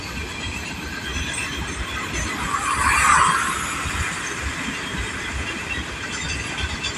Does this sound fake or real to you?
real